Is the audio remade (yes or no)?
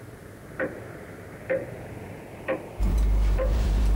yes